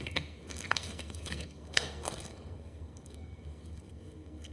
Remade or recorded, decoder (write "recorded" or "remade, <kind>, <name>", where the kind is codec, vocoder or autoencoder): remade, codec, SNAC